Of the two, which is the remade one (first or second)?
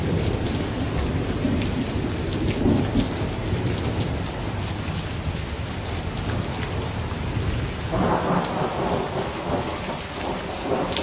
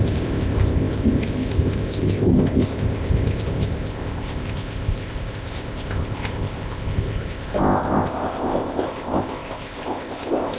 second